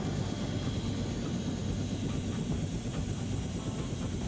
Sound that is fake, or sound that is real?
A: real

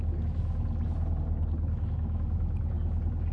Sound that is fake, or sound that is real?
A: real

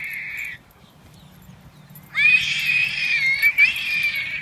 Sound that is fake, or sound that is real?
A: real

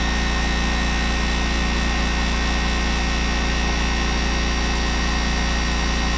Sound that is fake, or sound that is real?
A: real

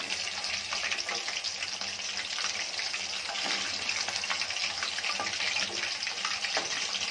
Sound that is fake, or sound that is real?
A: real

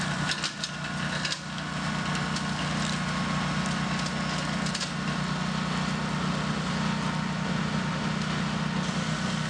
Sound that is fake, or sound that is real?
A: real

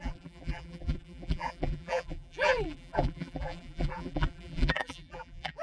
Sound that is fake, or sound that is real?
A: fake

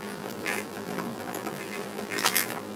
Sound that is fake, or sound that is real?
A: fake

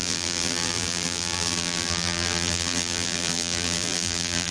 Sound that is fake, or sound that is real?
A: fake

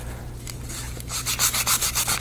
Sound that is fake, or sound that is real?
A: real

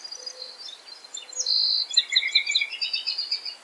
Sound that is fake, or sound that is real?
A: real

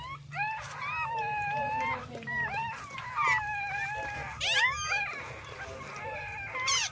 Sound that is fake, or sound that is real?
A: real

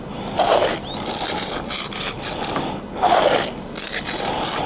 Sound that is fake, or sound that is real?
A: real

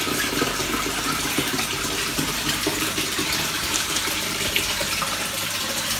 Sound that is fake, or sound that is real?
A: fake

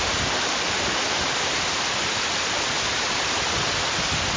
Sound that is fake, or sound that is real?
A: real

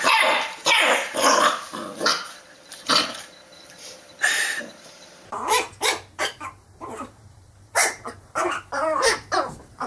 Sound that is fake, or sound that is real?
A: fake